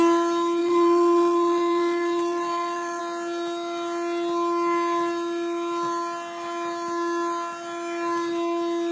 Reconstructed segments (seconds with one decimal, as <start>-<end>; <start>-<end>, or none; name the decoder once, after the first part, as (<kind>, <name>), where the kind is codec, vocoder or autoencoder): 0.6-3.0 (vocoder, Vocos)